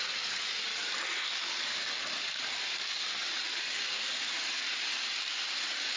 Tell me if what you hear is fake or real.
real